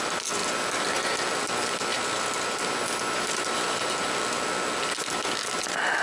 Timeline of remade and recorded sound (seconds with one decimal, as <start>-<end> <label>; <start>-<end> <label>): 0.0-6.0 recorded